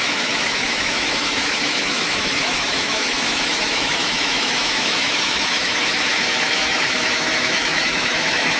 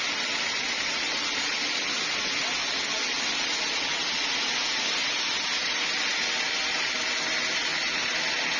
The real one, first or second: second